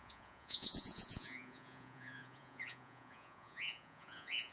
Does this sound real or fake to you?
fake